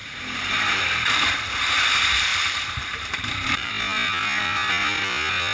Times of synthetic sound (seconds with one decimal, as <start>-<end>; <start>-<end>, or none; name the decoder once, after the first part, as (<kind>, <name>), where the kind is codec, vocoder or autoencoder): 0.0-0.8 (vocoder, BigVGAN v2); 2.3-3.7